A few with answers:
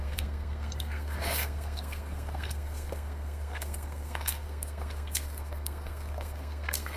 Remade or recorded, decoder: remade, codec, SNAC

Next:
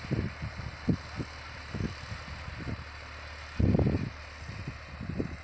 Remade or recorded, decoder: recorded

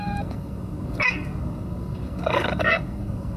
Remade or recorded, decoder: remade, codec, SNAC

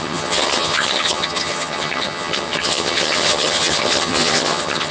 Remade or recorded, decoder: remade, vocoder, HiFi-GAN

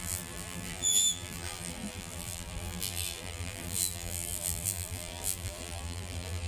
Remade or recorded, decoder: remade, vocoder, BigVGAN v2